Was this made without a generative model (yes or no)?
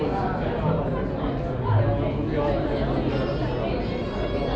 yes